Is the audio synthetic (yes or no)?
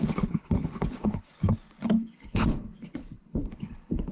yes